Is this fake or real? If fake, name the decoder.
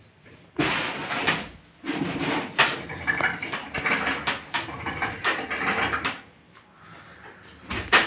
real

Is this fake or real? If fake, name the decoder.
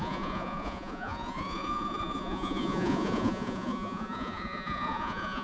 fake, vocoder, Vocos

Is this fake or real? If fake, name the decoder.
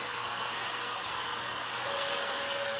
fake, codec, SNAC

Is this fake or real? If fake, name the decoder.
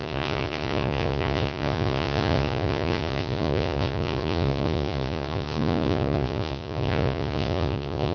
fake, vocoder, Vocos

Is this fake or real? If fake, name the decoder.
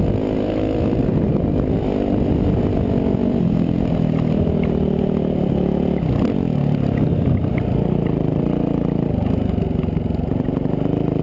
real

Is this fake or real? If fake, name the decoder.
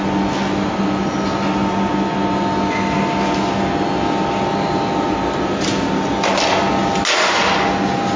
real